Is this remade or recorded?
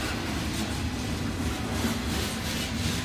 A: recorded